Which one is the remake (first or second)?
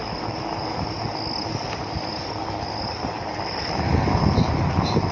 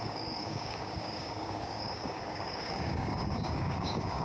second